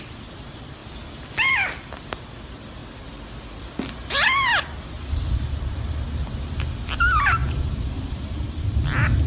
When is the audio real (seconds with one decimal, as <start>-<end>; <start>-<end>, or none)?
0.8-1.5